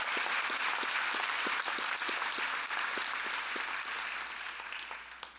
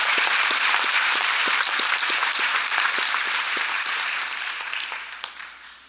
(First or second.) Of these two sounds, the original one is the first